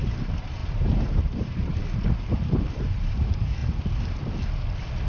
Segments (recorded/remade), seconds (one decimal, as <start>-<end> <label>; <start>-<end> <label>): 0.0-3.6 remade; 3.6-5.1 recorded